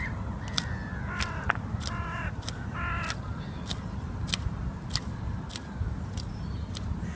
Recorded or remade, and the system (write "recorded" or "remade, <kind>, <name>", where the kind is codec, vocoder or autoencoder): recorded